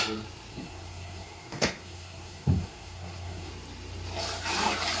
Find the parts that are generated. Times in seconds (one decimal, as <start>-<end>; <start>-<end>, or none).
0.5-3.5